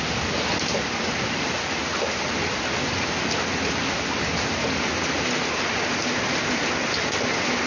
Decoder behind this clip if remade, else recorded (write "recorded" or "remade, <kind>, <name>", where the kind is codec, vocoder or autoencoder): recorded